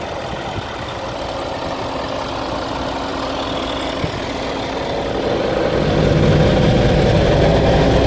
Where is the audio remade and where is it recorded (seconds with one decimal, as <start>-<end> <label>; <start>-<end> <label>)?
0.0-8.1 recorded